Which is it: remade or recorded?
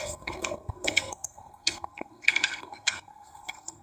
remade